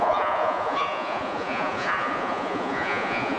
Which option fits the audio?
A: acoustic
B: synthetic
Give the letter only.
B